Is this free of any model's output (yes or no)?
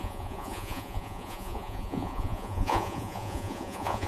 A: no